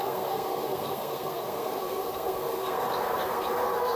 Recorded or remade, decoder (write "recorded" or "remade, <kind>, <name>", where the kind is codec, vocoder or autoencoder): remade, codec, SNAC